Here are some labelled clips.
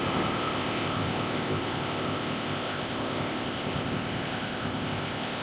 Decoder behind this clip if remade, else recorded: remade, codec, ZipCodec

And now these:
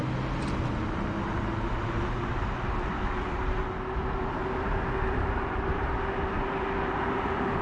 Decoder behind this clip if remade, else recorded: recorded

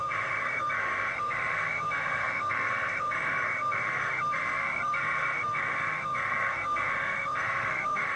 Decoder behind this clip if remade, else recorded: remade, codec, SNAC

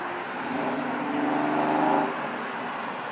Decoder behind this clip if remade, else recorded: recorded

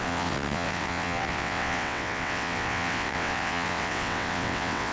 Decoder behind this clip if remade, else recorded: remade, vocoder, WaveNeXt